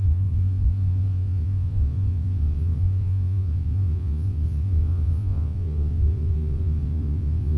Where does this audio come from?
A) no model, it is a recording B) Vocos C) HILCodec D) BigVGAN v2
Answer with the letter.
B